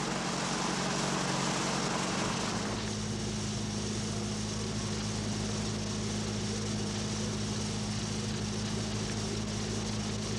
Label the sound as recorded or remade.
recorded